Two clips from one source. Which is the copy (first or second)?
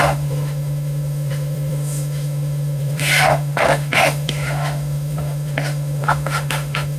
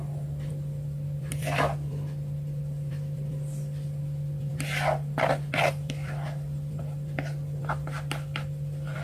first